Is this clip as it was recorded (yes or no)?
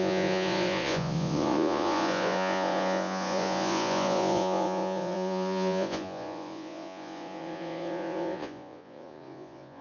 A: no